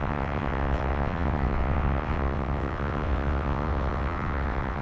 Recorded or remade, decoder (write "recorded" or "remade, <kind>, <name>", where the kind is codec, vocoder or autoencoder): remade, vocoder, WaveNeXt